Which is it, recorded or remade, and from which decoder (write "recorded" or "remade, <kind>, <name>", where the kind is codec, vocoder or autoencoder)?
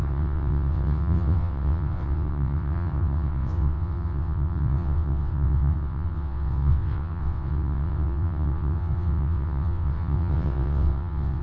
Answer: remade, vocoder, WaveNeXt